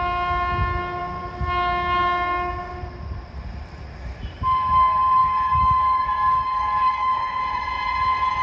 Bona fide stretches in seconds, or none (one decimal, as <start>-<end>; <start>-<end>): 0.0-5.2; 7.4-8.4